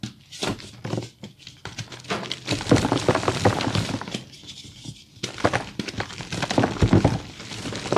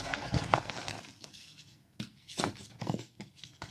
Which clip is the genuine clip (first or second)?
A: first